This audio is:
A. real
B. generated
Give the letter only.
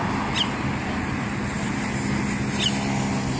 A